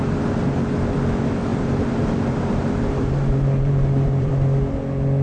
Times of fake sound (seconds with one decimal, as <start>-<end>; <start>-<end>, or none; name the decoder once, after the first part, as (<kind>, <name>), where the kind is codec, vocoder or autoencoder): 1.5-4.3 (vocoder, BigVGAN v2)